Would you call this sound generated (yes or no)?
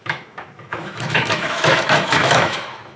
yes